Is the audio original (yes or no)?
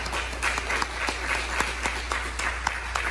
yes